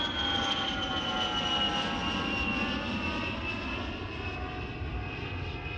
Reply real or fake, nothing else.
real